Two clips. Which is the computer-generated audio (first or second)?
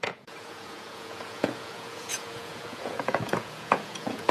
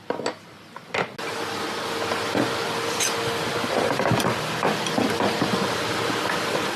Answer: first